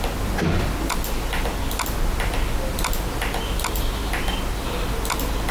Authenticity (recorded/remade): recorded